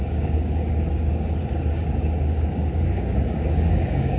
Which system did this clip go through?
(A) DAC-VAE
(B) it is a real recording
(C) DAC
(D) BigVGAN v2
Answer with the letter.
C